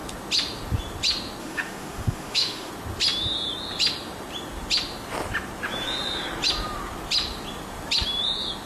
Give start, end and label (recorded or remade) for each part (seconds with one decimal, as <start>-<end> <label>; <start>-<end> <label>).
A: 0.0-1.4 recorded; 1.4-2.7 remade; 2.7-8.7 recorded